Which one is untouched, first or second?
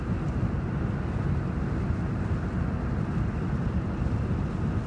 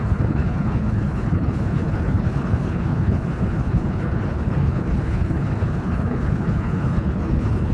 first